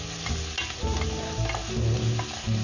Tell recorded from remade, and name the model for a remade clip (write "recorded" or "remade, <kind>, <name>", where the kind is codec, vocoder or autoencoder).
recorded